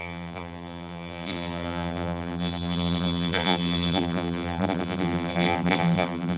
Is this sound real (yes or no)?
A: no